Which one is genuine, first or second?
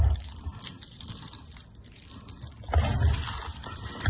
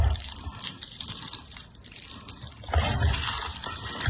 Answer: first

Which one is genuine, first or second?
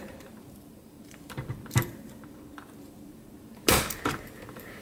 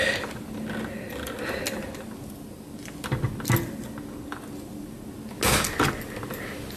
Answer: second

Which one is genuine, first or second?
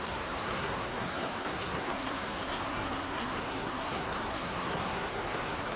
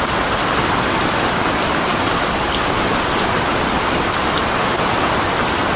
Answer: second